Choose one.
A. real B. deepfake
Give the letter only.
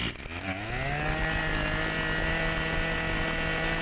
A